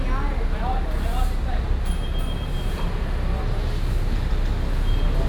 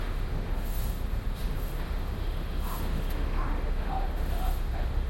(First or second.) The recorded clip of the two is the first